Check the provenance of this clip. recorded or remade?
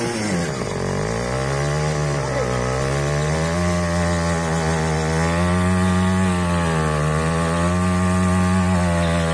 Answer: recorded